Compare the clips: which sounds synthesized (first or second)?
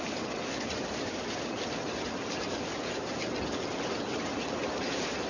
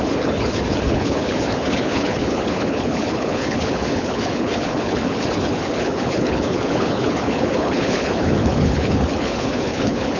second